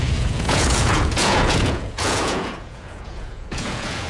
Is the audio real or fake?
fake